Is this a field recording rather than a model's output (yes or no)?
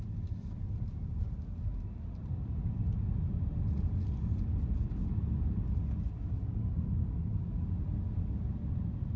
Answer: yes